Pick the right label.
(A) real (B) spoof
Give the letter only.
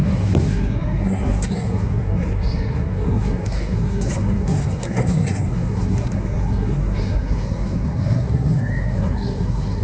B